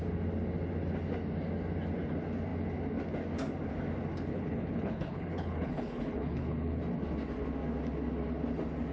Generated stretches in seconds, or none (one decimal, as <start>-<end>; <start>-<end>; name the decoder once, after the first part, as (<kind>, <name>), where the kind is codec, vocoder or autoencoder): 4.3-6.8 (codec, HILCodec)

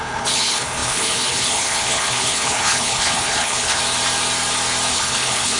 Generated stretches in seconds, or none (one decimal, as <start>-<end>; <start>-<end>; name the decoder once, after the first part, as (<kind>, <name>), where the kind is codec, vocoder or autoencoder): 0.0-3.8 (codec, HILCodec); 4.9-5.6

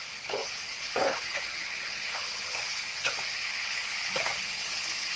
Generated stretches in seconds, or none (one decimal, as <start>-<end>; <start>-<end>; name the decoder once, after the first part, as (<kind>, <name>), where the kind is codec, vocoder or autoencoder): 0.0-5.2 (codec, HILCodec)

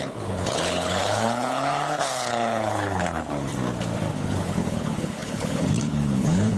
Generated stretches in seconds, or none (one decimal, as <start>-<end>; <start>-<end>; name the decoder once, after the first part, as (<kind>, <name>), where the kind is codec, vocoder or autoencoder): 0.0-3.5 (codec, HILCodec); 4.1-6.6

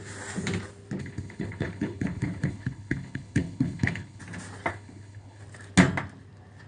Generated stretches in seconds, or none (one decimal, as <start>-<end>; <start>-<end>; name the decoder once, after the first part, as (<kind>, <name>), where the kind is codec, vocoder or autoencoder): 1.0-4.2 (codec, HILCodec); 4.7-5.4

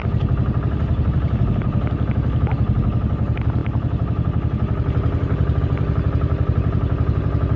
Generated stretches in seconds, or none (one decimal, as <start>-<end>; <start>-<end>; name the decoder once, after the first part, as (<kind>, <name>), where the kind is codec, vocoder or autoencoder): none

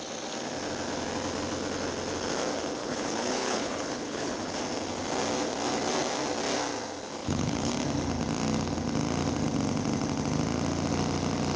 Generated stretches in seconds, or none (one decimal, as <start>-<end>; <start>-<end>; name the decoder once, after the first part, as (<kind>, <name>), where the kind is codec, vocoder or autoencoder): 2.8-4.6 (codec, HILCodec); 7.2-7.7